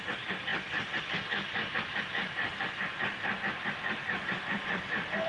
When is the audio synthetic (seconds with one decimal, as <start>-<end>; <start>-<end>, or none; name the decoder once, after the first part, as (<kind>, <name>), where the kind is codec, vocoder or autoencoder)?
none